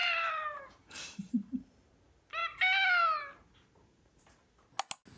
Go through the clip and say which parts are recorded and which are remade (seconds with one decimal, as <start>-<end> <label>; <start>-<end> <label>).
0.0-1.9 remade; 1.9-5.2 recorded